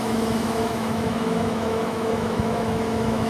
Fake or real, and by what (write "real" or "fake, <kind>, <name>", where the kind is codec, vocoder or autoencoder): fake, autoencoder, DAC-VAE